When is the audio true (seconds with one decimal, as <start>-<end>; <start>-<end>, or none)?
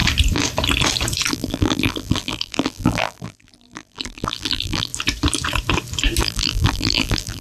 0.0-1.3; 4.9-6.2